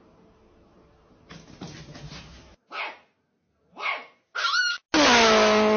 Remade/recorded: recorded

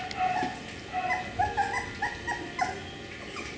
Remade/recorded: recorded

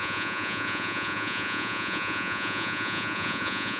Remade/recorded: remade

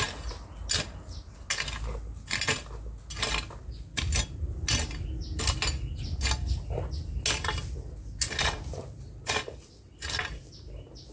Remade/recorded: recorded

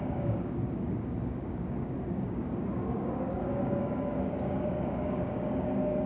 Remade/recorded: remade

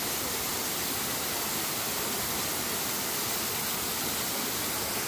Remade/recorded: recorded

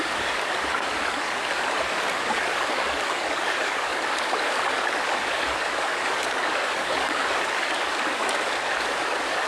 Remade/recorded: remade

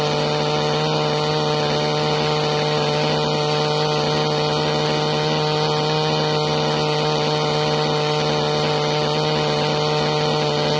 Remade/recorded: recorded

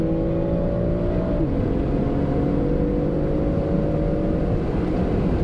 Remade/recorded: recorded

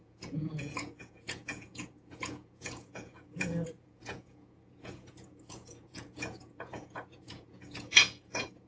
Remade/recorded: remade